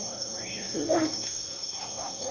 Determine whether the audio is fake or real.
fake